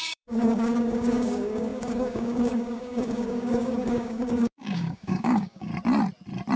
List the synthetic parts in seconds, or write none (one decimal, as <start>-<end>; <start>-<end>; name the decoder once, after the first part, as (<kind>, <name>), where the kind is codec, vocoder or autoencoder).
0.0-5.7 (codec, DAC)